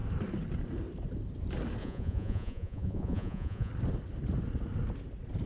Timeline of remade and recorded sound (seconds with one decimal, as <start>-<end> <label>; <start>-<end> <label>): 0.0-1.8 recorded; 1.8-3.7 remade; 3.7-5.5 recorded

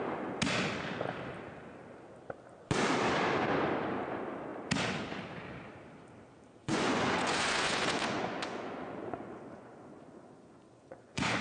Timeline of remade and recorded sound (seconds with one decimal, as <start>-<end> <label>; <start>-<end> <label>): 0.0-6.6 recorded; 6.6-11.4 remade

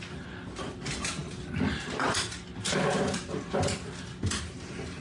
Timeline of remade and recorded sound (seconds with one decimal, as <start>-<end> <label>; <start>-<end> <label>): 0.0-5.0 recorded

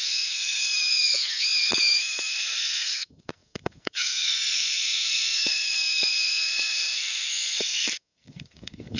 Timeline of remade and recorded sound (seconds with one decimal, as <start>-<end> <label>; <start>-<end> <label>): 0.0-9.0 remade

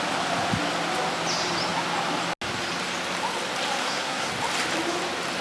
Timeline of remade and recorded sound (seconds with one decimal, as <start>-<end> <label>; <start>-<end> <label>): 0.0-3.8 recorded; 3.8-4.3 remade; 4.3-5.4 recorded

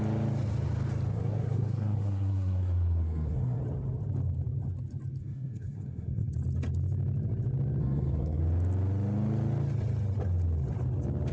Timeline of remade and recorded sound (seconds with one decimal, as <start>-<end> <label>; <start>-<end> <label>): 0.0-1.1 recorded; 1.1-3.6 remade; 3.6-5.2 recorded; 5.2-6.3 remade; 6.3-7.8 recorded; 7.8-8.4 remade; 8.4-11.3 recorded

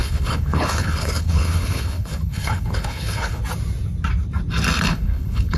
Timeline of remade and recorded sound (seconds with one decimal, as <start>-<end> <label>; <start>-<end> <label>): 0.0-3.4 remade; 3.4-4.9 recorded; 4.9-5.6 remade